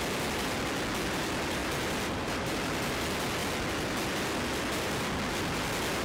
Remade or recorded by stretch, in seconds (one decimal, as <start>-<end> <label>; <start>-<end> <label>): 0.0-6.0 recorded